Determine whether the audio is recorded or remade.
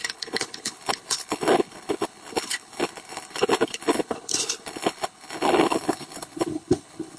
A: remade